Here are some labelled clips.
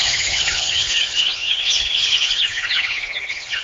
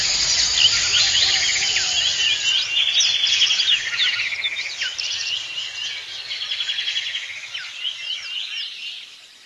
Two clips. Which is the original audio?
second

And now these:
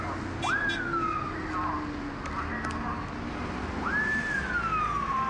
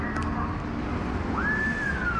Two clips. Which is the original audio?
first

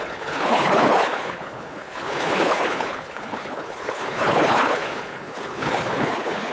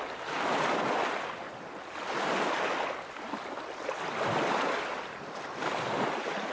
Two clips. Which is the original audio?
second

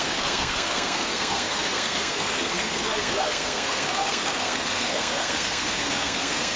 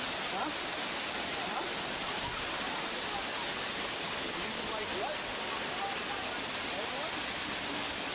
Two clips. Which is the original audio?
second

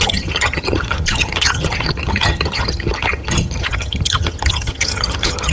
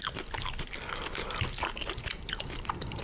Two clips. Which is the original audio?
second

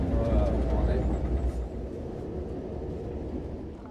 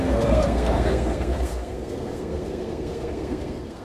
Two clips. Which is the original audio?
first